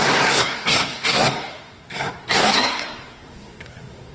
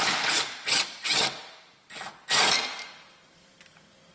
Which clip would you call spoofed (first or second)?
first